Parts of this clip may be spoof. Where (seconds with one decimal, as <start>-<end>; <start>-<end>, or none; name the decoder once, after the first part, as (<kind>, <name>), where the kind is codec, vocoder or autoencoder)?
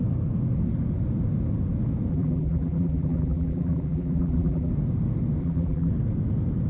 2.1-4.7 (vocoder, BigVGAN v2); 5.4-5.9